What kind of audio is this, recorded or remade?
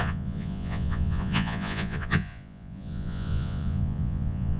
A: remade